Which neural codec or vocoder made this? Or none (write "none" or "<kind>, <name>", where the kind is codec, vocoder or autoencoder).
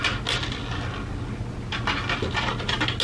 none